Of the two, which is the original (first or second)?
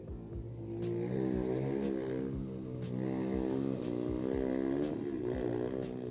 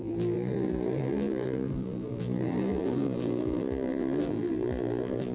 first